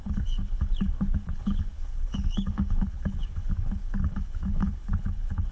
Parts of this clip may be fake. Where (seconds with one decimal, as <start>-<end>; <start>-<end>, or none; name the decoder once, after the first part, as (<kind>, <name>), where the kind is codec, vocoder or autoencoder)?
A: 0.0-5.5 (codec, HILCodec)